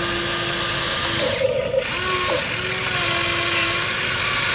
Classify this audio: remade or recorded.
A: recorded